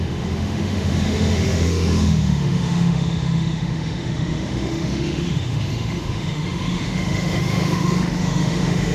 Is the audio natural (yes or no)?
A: no